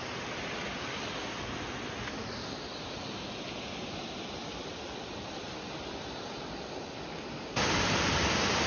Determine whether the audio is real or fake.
real